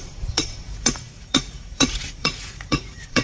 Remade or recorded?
remade